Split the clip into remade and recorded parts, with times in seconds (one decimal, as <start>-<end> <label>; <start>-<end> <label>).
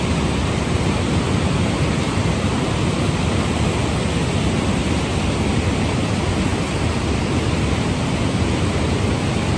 0.0-9.6 recorded